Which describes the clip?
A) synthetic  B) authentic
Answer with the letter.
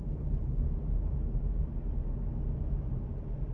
B